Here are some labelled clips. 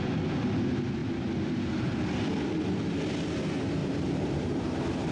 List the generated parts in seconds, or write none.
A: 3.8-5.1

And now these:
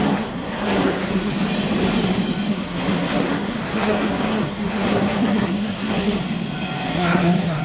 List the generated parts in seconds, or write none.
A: 0.0-1.3; 2.5-6.2; 6.9-7.6

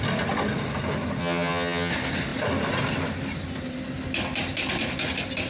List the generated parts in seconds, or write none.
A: 1.2-1.9

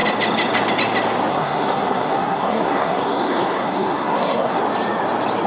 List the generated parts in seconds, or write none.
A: 1.3-4.6

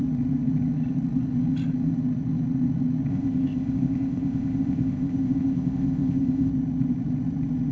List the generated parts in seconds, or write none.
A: 3.1-6.5

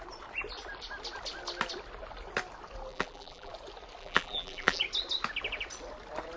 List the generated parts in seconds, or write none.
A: 2.9-3.5; 4.0-4.8